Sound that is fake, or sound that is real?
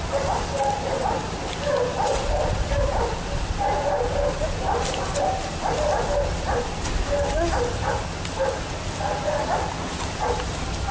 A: real